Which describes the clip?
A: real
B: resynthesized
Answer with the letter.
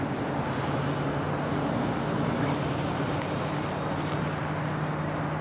A